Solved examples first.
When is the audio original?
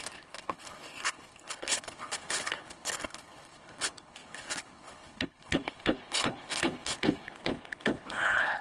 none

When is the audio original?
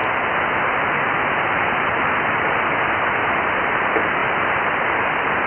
0.0-5.5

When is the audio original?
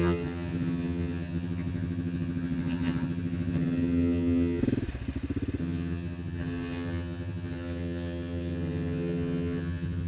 4.6-5.6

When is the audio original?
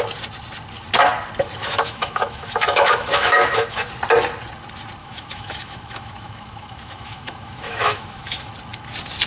0.0-1.6; 3.9-5.0; 8.5-9.3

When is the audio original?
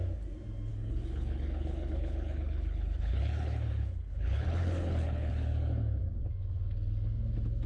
0.0-0.7; 5.3-7.7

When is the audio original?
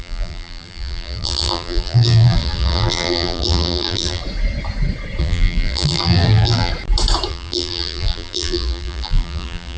4.2-5.2; 6.7-7.3